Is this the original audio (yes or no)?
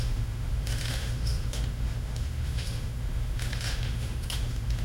no